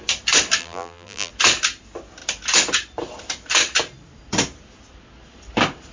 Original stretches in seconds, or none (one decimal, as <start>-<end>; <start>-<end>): 0.0-0.6; 1.3-5.9